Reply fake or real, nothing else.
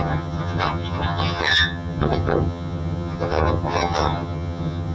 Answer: fake